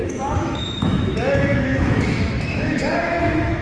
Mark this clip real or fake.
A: fake